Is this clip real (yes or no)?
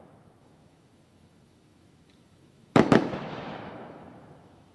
no